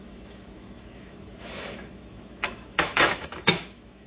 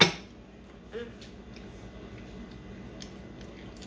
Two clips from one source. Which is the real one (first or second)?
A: second